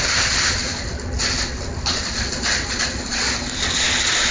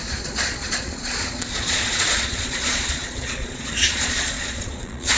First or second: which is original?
first